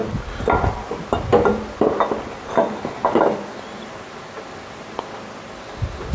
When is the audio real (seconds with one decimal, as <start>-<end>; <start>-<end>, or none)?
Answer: 0.0-6.1